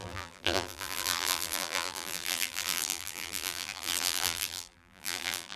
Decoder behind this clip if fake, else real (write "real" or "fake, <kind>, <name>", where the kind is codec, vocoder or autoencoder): fake, vocoder, BigVGAN v2